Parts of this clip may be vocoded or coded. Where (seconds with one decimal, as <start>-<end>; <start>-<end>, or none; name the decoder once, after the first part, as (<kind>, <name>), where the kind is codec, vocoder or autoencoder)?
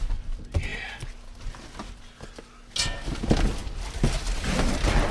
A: none